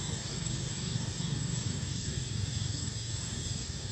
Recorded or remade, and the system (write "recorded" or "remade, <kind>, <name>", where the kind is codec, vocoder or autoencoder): remade, codec, DAC